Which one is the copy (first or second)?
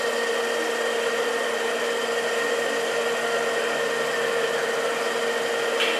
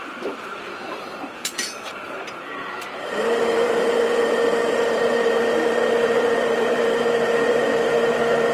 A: second